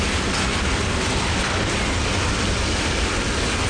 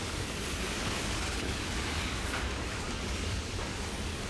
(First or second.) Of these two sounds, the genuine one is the first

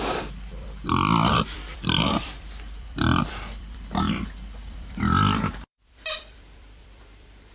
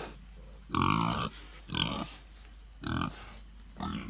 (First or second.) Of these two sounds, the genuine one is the second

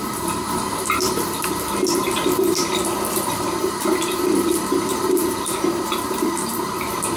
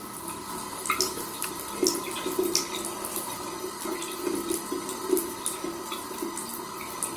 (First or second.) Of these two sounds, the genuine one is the second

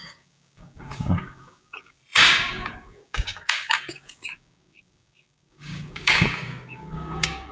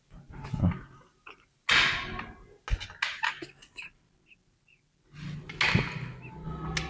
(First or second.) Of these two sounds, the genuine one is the second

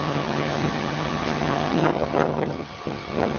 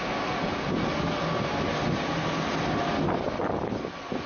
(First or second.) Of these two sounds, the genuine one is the second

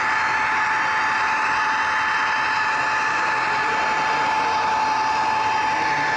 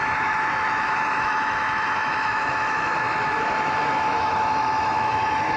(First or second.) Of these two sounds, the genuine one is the first